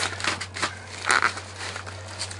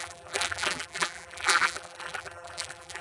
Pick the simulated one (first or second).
second